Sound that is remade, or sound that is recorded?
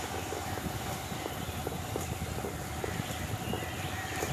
recorded